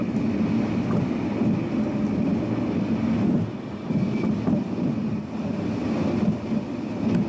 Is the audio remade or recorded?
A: recorded